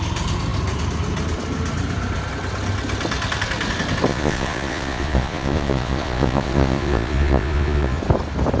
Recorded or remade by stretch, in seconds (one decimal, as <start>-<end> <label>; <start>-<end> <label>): 0.0-4.1 recorded; 4.1-8.0 remade; 8.0-8.6 recorded